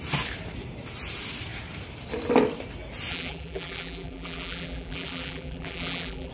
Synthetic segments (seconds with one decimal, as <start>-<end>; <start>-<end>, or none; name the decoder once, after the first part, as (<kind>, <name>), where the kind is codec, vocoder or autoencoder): 3.1-6.3 (vocoder, BigVGAN v2)